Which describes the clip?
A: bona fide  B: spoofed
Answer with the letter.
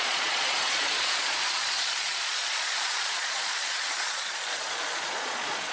B